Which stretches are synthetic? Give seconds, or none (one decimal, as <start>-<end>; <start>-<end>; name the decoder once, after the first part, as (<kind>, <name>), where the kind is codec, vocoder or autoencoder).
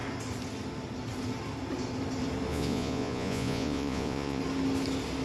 2.5-4.4 (vocoder, Vocos)